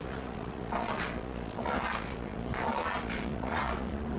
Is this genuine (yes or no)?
no